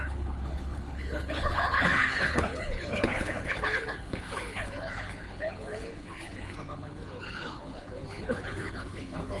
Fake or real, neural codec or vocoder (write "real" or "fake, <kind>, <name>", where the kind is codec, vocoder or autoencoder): fake, codec, HILCodec